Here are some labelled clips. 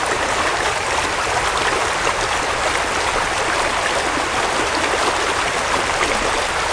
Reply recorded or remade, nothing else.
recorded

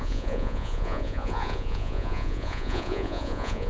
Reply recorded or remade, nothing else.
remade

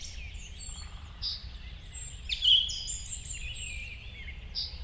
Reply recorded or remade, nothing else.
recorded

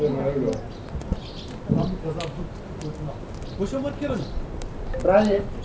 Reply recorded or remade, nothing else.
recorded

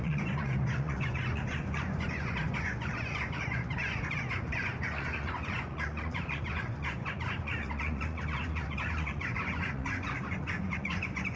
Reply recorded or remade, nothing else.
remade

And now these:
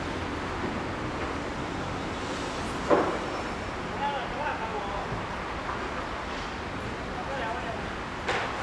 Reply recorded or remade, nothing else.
recorded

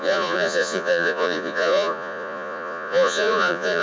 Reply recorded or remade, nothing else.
remade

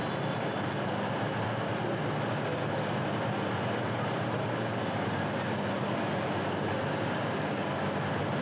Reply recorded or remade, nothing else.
recorded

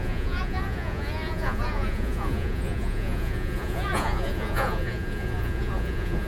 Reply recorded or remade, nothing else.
remade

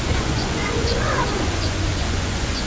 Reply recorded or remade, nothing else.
remade